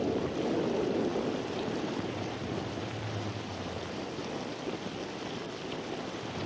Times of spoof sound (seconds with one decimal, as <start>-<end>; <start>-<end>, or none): none